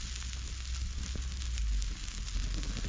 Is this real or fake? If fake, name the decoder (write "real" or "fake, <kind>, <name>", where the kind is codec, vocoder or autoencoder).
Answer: real